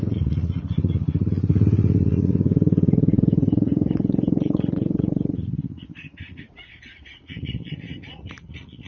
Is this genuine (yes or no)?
no